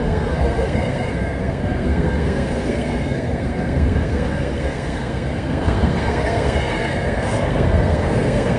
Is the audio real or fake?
fake